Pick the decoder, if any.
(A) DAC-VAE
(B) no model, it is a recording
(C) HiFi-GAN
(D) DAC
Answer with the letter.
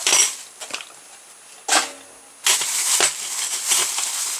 B